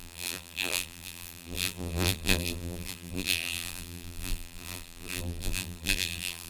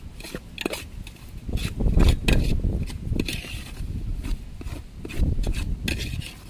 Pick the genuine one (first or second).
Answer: second